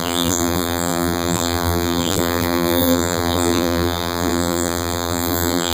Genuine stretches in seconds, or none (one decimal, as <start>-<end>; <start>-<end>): none